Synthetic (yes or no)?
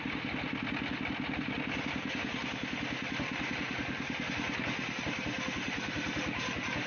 no